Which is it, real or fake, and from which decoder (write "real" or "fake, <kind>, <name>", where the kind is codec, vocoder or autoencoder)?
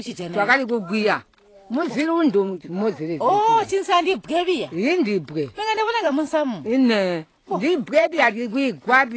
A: fake, vocoder, BigVGAN v2